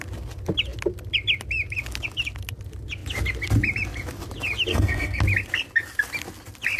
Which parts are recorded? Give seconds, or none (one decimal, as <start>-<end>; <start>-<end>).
0.0-4.7; 5.2-6.8